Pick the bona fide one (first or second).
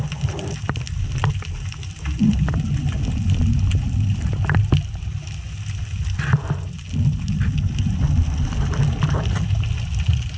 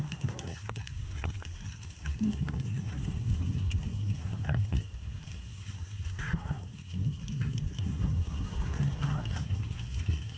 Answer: first